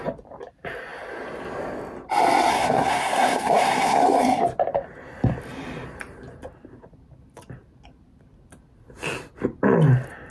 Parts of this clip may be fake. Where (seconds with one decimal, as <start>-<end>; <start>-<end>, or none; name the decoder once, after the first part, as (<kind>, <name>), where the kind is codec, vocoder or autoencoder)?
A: 2.5-4.4 (codec, SNAC)